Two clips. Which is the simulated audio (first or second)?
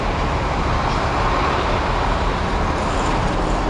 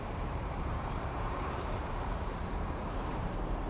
second